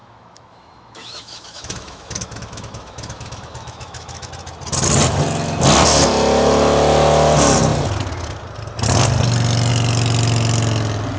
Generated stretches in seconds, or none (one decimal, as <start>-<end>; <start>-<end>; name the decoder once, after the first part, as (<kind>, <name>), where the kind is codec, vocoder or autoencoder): 0.0-4.3 (autoencoder, DAC-VAE)